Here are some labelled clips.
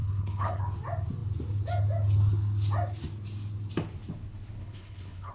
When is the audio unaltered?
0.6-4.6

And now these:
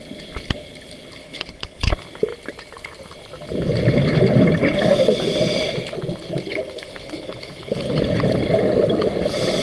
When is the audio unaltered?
0.0-1.2; 1.9-6.5; 8.0-9.6